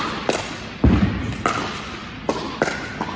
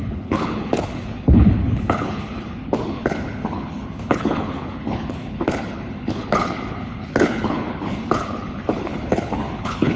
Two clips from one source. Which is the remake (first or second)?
second